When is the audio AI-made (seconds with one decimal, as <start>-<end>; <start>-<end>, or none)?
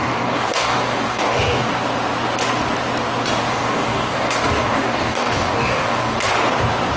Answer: 0.0-1.7; 3.4-6.2